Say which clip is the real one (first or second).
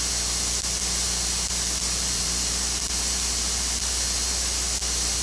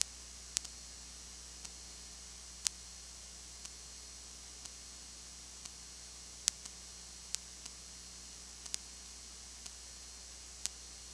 second